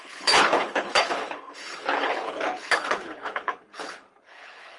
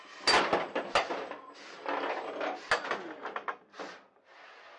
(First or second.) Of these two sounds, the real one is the second